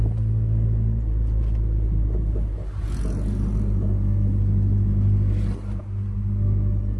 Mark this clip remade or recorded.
recorded